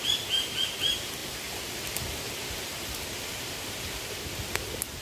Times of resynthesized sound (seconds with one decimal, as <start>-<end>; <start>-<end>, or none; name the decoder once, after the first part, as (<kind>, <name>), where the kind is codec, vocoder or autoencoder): 1.2-4.2 (vocoder, BigVGAN v2)